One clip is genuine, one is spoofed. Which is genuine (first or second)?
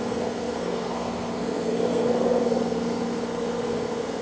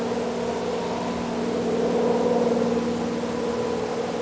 second